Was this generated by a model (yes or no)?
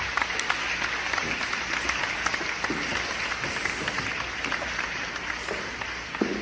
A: no